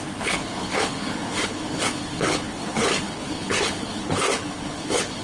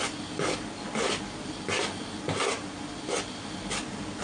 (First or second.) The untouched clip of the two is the second